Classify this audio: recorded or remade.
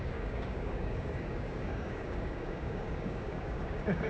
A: remade